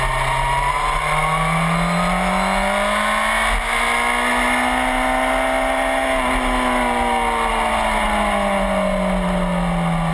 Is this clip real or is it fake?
real